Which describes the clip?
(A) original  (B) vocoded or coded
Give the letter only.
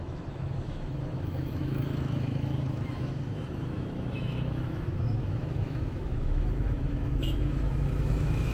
B